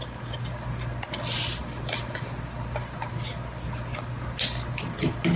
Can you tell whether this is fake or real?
real